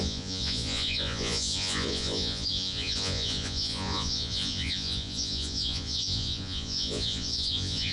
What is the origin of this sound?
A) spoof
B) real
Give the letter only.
A